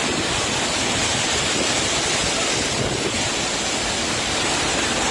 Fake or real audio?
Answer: real